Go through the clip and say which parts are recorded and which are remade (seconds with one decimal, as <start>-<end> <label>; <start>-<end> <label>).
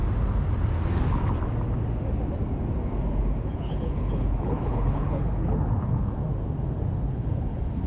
0.0-3.4 recorded; 3.4-6.2 remade; 6.2-7.1 recorded; 7.1-7.9 remade